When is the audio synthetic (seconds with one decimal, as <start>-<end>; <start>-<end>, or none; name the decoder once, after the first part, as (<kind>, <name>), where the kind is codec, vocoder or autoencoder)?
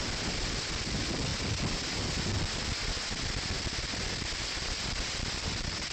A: none